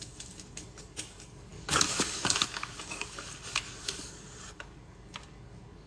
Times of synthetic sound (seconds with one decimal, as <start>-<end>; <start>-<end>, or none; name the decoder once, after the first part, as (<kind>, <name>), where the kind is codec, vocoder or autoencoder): 0.0-5.9 (codec, DAC)